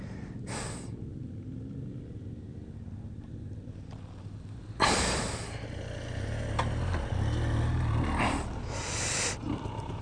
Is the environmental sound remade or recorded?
recorded